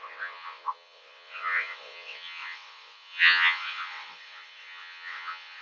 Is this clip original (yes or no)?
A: no